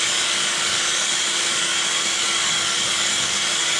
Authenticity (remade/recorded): remade